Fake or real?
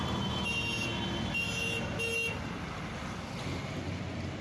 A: real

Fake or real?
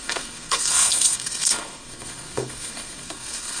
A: fake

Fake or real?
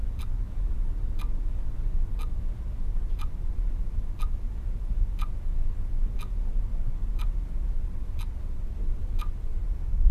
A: real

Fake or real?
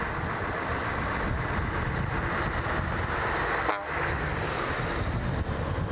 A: real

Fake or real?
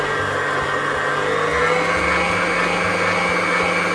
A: real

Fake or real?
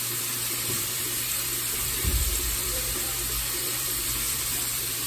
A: fake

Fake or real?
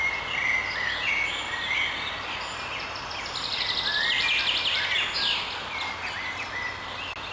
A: real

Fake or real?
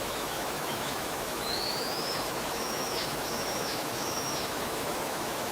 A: fake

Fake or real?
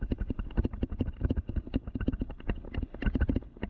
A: real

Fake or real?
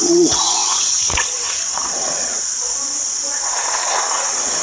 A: fake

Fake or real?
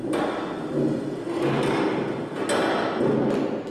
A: real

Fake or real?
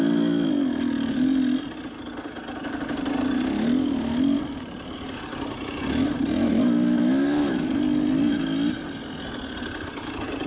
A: real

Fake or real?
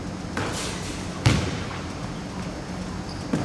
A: real